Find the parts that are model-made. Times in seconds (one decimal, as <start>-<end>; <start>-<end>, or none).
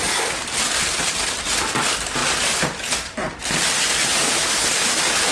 2.2-3.4; 3.9-4.7